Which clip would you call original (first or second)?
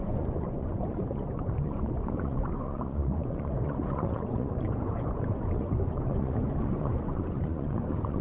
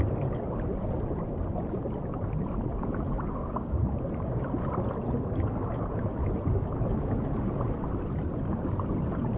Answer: second